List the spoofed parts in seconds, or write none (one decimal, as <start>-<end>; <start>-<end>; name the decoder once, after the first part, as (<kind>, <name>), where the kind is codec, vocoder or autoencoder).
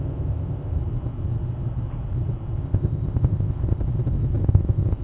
0.0-0.8 (codec, ZipCodec); 2.6-3.8; 4.4-5.0